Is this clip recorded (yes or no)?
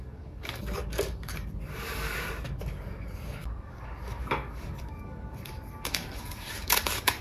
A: no